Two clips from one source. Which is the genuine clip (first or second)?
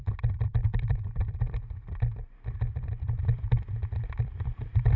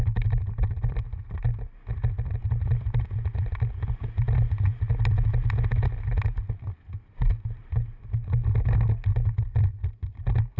second